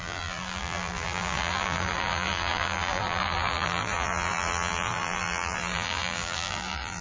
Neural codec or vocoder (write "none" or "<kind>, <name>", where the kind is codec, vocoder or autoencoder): vocoder, BigVGAN v2